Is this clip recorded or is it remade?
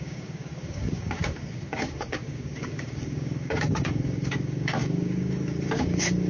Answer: remade